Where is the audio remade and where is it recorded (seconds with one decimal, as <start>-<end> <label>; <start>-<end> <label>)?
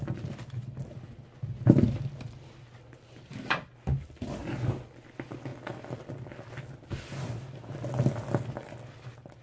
0.0-9.4 recorded